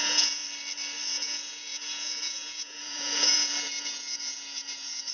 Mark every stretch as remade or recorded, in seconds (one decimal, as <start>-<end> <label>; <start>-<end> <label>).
0.0-0.4 remade; 0.4-1.1 recorded; 1.1-5.1 remade